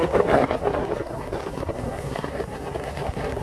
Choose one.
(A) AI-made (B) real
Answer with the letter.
A